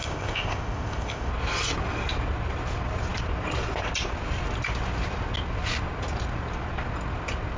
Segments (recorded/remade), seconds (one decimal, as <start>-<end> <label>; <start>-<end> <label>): 0.0-1.3 remade; 1.3-7.6 recorded